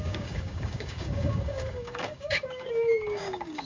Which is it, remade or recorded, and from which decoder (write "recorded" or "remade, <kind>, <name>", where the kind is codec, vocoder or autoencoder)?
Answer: remade, codec, DAC